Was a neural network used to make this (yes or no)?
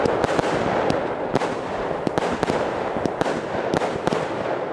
no